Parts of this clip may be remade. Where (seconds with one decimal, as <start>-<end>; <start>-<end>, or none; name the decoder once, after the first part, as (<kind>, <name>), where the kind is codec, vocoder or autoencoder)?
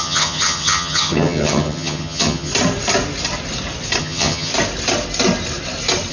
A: 0.0-2.5 (vocoder, HiFi-GAN); 4.0-4.5